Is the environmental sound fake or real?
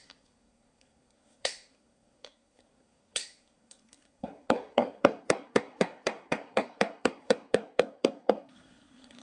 fake